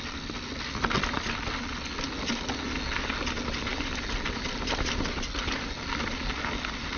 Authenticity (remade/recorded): recorded